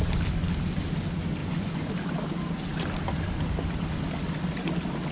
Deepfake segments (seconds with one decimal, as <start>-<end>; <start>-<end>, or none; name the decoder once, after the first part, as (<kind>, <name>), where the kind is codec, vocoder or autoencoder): 1.4-1.9 (vocoder, Vocos)